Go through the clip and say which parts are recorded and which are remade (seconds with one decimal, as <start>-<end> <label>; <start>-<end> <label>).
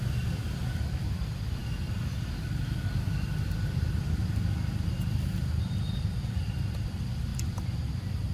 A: 0.0-1.6 remade; 1.6-2.9 recorded; 2.9-7.3 remade; 7.3-7.9 recorded; 7.9-8.3 remade